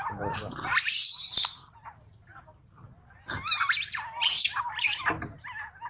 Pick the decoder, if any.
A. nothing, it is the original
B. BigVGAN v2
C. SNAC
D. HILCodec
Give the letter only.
A